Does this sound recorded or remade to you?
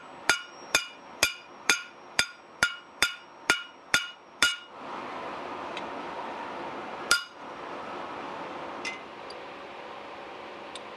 remade